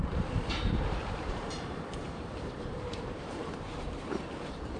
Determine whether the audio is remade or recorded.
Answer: remade